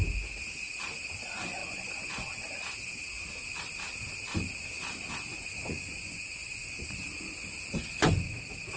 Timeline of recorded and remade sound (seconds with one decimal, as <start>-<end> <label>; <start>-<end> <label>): 0.0-1.6 recorded; 1.6-2.4 remade; 2.4-5.3 recorded; 5.3-8.2 remade; 8.2-8.8 recorded